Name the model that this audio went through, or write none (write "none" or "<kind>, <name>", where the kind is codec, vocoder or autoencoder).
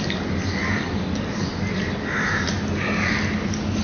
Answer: none